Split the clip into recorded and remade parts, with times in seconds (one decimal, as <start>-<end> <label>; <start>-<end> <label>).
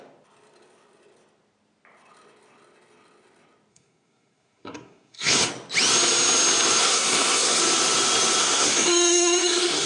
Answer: 0.0-3.7 recorded; 3.7-5.5 remade; 5.5-6.8 recorded; 6.8-7.6 remade; 7.6-8.4 recorded; 8.4-9.9 remade